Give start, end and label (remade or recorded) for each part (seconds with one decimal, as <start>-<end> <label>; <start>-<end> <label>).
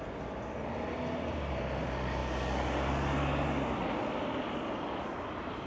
0.0-5.7 recorded